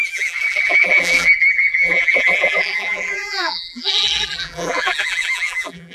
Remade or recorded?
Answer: remade